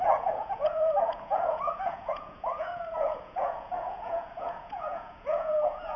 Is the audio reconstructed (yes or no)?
yes